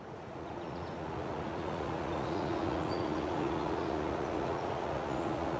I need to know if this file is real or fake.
fake